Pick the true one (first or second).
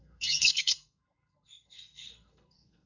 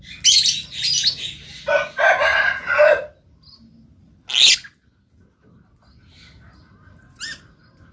second